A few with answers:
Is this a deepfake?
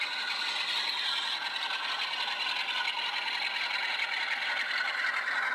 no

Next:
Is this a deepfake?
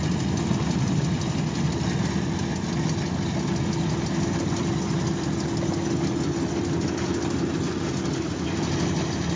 no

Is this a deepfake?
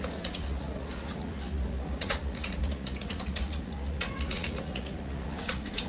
yes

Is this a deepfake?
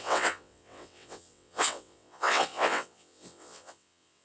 yes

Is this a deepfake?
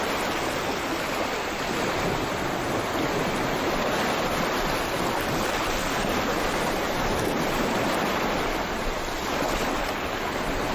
no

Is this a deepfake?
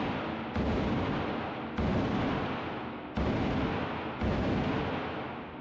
no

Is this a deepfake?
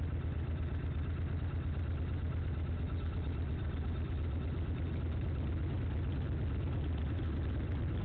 no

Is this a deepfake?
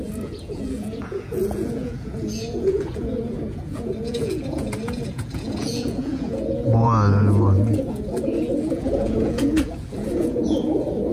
yes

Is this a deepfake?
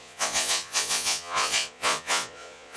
yes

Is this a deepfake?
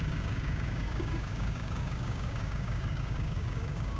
yes